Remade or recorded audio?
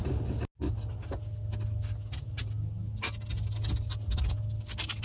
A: recorded